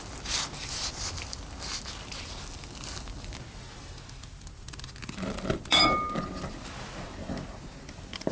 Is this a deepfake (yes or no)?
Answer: no